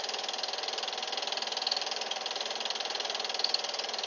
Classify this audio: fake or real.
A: real